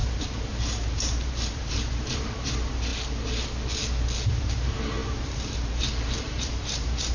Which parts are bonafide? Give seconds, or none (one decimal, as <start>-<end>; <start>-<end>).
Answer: 2.9-4.3